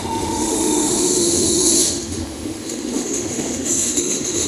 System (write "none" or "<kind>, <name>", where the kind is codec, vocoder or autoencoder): autoencoder, DAC-VAE